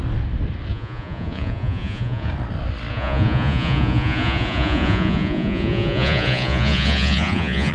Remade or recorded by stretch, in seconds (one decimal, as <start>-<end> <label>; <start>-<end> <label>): 0.0-0.7 recorded; 0.7-2.3 remade; 2.3-2.9 recorded; 2.9-7.7 remade